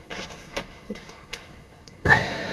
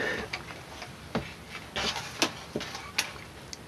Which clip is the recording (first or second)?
second